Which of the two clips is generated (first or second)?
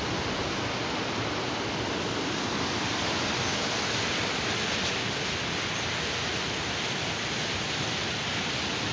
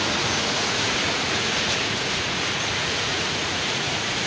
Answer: second